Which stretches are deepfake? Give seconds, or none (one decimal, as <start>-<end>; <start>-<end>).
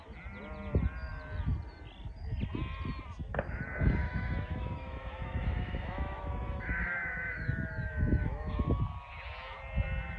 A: 4.0-8.8